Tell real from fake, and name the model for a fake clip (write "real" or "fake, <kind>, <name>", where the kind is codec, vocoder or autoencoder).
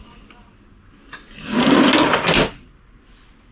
real